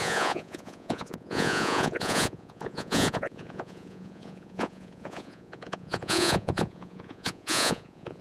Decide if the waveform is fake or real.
fake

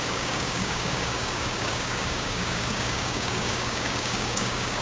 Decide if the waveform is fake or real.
fake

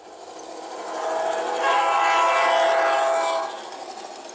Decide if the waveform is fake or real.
real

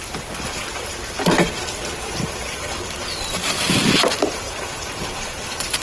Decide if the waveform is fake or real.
real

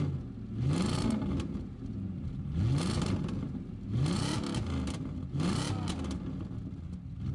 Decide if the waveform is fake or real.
real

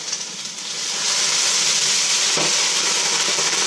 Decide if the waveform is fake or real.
real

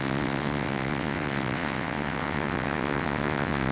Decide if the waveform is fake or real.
fake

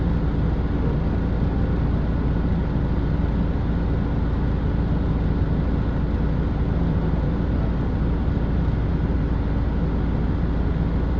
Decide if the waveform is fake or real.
real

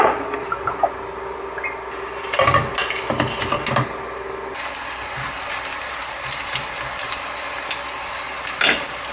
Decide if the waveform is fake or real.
real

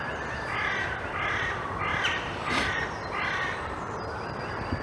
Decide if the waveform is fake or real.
fake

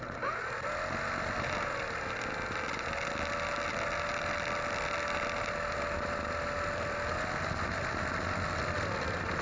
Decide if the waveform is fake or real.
real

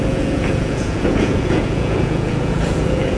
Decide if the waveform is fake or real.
fake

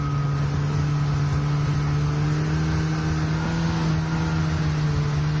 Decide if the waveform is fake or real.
real